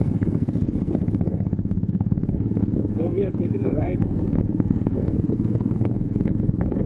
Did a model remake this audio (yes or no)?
yes